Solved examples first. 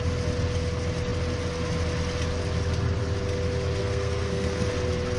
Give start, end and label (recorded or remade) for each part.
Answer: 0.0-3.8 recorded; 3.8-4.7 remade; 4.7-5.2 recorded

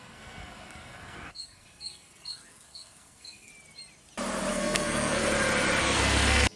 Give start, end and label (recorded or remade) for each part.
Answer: 0.0-3.5 remade; 3.5-4.5 recorded; 4.5-5.2 remade; 5.2-5.8 recorded; 5.8-6.6 remade

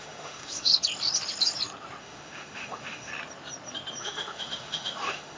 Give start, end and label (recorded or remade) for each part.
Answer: 0.0-0.7 remade; 0.7-2.0 recorded; 2.0-3.1 remade; 3.1-4.0 recorded; 4.0-5.4 remade

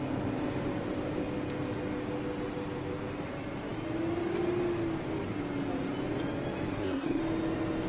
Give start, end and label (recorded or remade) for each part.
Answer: 0.0-6.7 recorded; 6.7-7.2 remade; 7.2-7.9 recorded